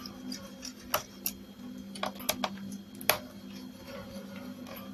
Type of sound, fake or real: real